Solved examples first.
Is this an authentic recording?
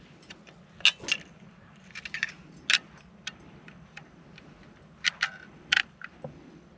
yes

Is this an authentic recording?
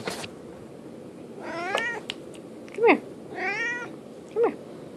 yes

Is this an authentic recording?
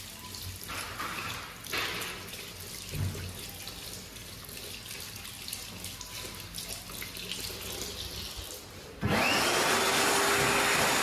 yes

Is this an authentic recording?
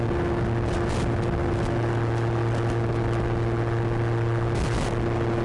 yes